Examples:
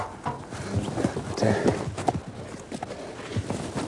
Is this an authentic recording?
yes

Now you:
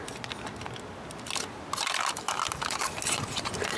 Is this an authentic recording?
yes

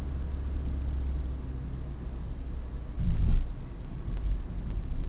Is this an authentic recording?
yes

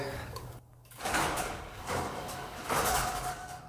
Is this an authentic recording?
no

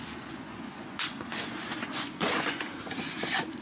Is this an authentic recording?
no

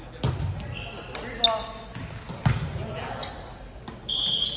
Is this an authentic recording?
yes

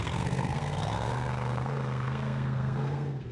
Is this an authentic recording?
no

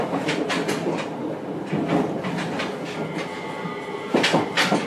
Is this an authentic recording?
yes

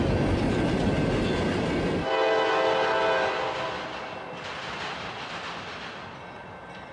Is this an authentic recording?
yes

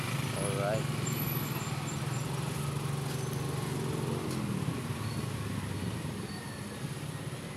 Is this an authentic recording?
yes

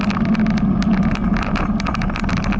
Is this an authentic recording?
yes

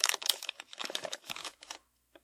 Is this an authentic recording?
no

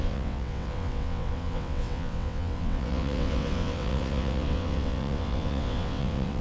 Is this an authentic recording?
no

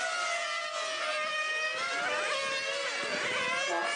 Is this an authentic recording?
yes